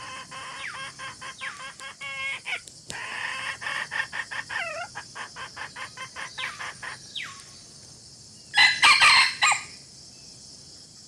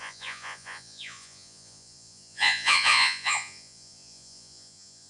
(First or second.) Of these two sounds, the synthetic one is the second